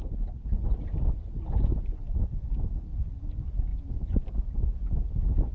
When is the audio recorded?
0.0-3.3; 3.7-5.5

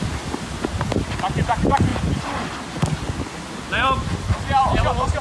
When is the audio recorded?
0.0-5.2

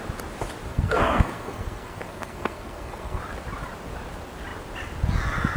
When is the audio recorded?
0.0-0.7; 3.2-5.6

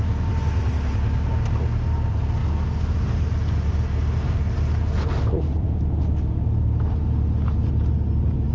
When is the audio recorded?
0.0-8.5